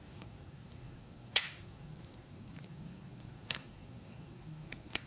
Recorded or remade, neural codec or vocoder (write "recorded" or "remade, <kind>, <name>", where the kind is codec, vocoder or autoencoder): remade, codec, SNAC